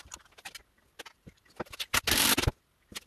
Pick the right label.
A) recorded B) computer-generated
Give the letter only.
A